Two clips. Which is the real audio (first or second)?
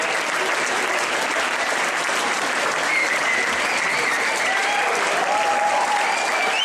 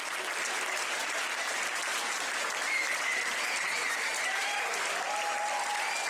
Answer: second